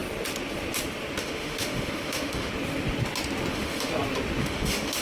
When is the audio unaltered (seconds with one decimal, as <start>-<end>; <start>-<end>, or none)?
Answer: 0.0-1.2; 2.5-3.5; 3.9-4.4